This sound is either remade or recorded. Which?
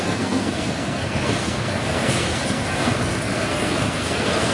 remade